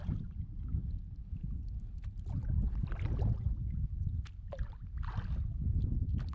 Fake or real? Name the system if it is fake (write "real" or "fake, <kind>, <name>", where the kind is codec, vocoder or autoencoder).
real